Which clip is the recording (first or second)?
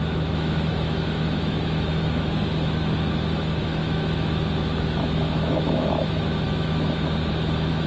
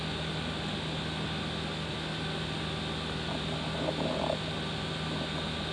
second